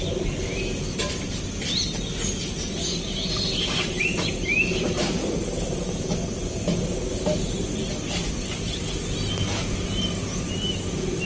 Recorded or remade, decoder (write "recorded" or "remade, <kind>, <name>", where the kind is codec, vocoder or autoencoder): recorded